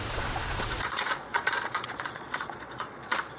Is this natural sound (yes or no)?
no